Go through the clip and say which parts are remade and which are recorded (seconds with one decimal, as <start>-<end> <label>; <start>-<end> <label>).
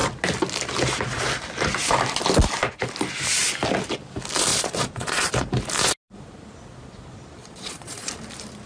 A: 0.0-4.5 recorded; 4.5-5.3 remade; 5.3-7.4 recorded; 7.4-8.1 remade; 8.1-8.7 recorded